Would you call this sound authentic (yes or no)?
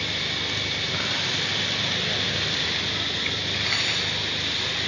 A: yes